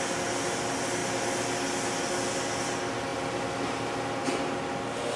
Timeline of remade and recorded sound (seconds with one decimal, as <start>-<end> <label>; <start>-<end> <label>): 0.0-5.2 recorded